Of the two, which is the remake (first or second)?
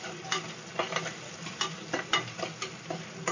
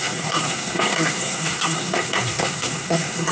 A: second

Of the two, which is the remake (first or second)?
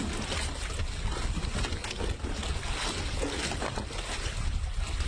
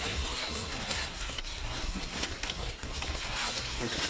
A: second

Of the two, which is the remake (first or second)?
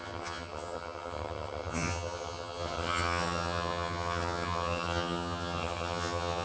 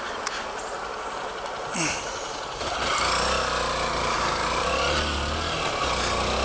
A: first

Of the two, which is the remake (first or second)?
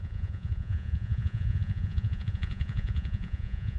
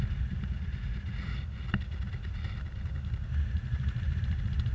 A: first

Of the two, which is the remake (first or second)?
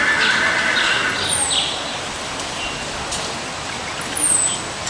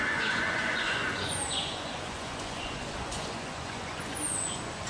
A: second